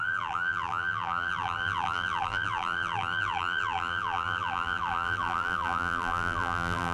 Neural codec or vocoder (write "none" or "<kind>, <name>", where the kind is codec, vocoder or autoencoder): vocoder, BigVGAN v2